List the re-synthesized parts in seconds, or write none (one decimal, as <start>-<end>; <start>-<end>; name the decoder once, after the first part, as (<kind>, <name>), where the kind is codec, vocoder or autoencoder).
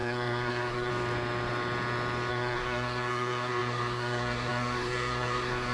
0.0-0.9 (codec, SNAC); 2.3-5.7